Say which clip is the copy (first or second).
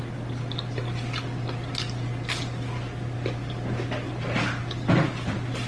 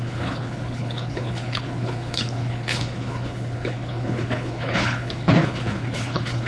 second